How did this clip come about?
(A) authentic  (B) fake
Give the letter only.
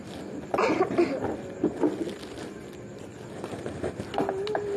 A